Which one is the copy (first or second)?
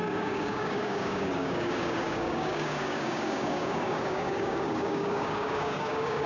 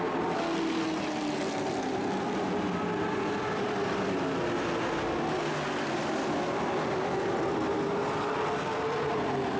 first